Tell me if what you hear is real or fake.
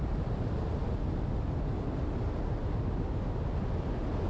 real